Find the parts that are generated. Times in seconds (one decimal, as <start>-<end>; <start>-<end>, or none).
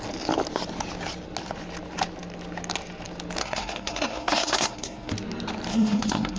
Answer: 3.4-5.1; 5.7-6.4